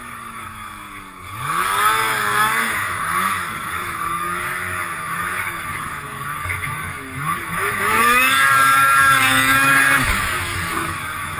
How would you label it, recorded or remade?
remade